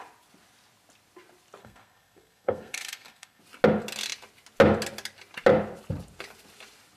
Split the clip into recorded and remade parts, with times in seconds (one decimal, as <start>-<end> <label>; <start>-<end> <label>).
0.0-1.6 recorded; 1.6-3.4 remade; 3.4-7.0 recorded